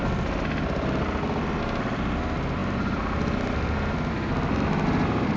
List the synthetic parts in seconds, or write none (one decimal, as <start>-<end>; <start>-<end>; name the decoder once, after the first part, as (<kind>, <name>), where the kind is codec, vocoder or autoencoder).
none